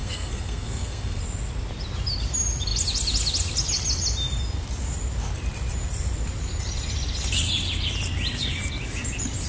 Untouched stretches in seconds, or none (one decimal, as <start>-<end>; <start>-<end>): 1.2-9.5